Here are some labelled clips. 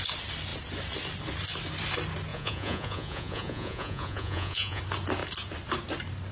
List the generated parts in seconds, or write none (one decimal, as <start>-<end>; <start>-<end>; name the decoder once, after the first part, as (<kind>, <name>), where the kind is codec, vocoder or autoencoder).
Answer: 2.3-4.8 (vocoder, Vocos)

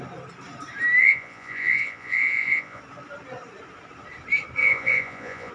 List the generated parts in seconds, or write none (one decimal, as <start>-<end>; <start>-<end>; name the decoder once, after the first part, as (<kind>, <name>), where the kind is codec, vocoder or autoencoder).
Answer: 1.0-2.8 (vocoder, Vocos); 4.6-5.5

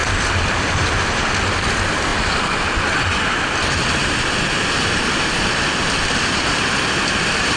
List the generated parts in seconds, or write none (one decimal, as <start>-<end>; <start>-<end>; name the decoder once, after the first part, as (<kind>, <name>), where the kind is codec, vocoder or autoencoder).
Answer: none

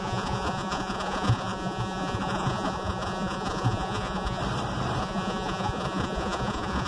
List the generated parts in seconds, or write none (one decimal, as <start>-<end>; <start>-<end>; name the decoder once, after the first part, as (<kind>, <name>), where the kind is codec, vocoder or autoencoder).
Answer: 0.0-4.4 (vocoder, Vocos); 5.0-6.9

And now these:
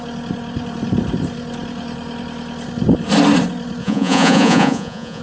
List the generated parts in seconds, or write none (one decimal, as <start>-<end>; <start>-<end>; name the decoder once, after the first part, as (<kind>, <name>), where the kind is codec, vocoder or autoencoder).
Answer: 3.8-5.2 (vocoder, Vocos)

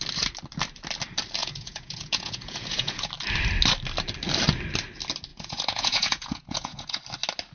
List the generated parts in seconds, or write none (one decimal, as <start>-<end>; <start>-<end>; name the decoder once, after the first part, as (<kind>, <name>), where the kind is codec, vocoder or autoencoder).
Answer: 1.4-3.1 (vocoder, Vocos); 5.3-7.0

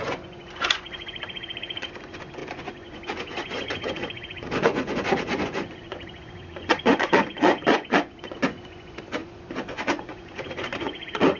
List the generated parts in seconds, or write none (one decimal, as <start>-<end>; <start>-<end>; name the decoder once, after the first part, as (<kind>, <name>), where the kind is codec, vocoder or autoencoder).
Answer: 0.0-11.4 (vocoder, Vocos)

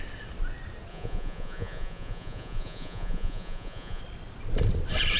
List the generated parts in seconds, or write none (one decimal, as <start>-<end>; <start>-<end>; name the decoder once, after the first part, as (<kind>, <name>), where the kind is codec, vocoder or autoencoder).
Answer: 0.9-4.0 (vocoder, Vocos)